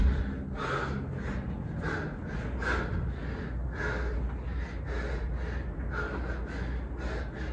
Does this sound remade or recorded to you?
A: recorded